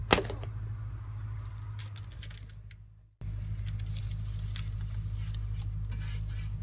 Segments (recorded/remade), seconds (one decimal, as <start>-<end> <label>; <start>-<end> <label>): 0.0-6.6 recorded